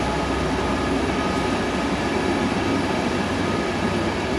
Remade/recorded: recorded